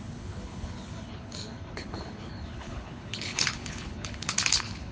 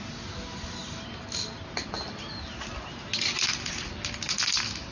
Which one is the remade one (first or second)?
first